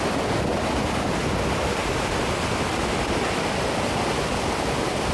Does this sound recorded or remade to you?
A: recorded